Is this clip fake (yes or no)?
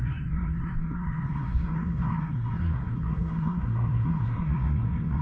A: yes